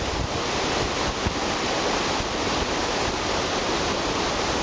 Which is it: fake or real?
real